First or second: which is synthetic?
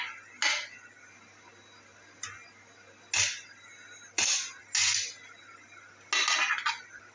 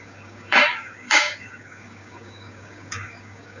second